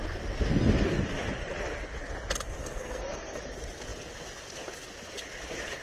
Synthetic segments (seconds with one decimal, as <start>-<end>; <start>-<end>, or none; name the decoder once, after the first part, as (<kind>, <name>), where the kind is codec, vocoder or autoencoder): 2.6-3.4 (codec, SNAC)

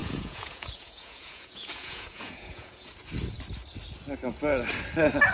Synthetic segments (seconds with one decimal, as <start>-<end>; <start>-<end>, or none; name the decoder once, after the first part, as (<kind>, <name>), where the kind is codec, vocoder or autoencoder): 0.0-2.9 (vocoder, Vocos)

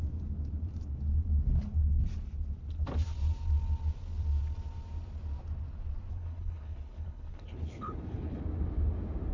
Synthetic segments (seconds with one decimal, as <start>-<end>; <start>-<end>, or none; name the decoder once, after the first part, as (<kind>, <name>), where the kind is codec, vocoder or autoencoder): 6.1-8.4 (codec, HILCodec)